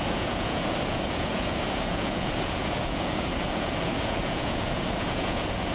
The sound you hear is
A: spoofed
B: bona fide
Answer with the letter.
A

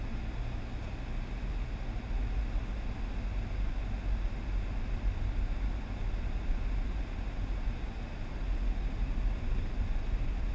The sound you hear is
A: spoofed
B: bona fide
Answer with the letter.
B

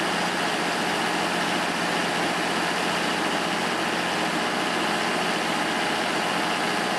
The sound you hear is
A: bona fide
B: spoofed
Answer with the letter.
A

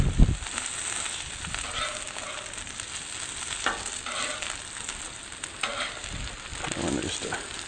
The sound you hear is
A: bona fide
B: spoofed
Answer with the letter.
A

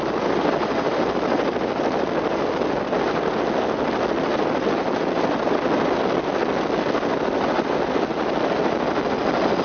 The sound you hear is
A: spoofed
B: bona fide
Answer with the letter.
B